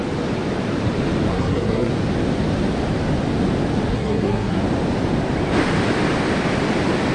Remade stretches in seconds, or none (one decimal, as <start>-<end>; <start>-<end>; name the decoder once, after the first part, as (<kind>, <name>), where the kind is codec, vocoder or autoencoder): 1.3-1.9 (codec, SNAC); 3.9-4.6